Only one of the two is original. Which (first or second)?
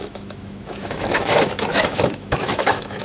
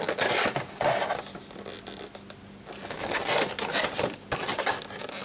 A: second